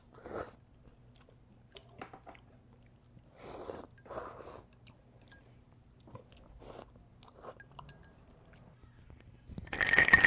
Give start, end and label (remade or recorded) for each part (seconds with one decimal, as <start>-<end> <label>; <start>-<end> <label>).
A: 0.0-10.3 recorded